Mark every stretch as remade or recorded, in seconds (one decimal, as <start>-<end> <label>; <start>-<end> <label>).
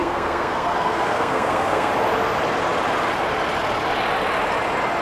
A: 0.0-1.9 remade; 1.9-5.0 recorded